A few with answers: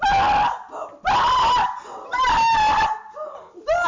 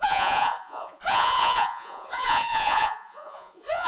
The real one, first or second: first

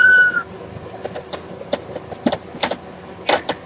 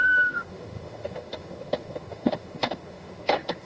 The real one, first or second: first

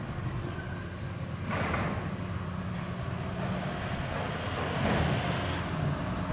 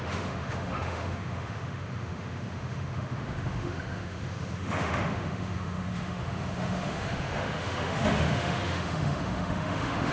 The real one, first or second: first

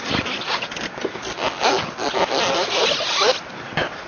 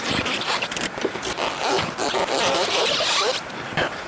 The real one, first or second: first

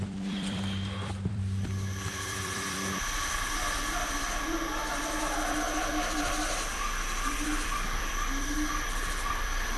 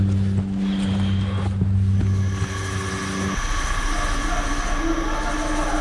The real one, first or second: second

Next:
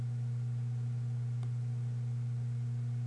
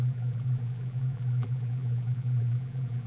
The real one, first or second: first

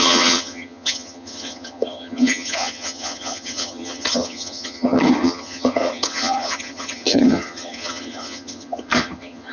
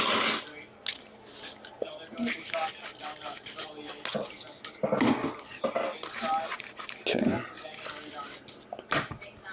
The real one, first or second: second